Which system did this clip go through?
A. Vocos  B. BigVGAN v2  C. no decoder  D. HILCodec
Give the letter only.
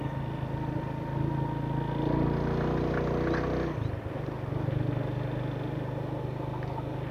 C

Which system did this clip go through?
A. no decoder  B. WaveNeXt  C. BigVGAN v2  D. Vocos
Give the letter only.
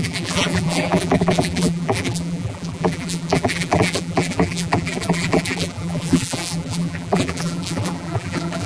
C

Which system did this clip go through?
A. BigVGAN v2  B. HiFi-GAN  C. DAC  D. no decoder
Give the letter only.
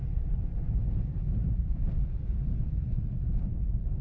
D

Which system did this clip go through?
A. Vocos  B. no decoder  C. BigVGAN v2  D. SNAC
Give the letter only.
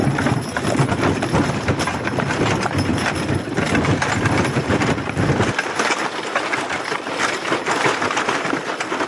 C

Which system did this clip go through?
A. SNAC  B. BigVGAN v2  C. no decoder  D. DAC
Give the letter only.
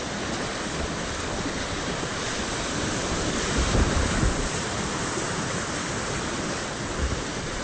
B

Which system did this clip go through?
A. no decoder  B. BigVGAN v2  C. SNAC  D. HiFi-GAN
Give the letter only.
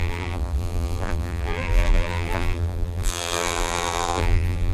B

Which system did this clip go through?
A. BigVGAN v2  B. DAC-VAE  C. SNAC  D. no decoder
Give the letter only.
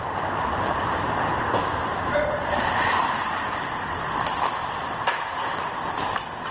D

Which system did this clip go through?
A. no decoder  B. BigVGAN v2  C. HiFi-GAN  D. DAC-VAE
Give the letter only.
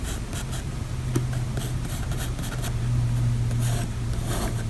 A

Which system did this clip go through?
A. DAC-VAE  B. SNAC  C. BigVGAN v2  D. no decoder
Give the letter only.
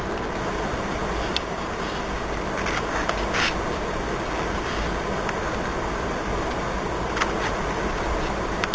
D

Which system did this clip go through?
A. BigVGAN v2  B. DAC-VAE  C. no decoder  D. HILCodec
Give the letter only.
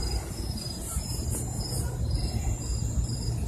A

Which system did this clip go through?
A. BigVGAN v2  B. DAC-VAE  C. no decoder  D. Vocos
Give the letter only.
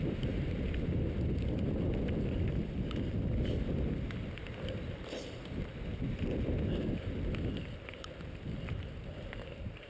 A